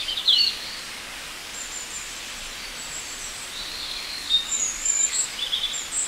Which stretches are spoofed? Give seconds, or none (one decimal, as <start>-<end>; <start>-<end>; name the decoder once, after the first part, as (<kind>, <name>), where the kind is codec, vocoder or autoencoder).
0.0-1.4 (codec, DAC); 3.7-5.3